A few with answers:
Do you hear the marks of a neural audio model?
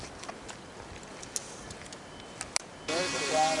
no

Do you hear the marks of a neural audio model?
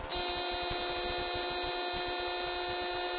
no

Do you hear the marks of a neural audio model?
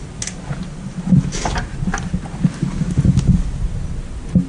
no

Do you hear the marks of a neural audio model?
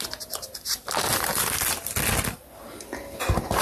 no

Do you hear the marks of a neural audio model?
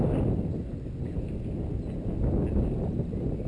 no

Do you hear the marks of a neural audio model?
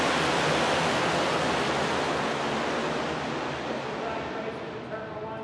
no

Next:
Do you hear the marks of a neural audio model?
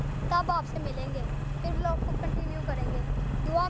no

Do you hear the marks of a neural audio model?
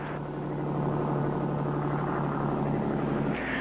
no